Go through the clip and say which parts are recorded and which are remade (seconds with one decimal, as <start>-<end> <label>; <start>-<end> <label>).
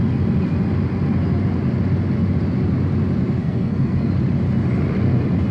0.0-3.4 recorded; 3.4-4.1 remade; 4.1-5.5 recorded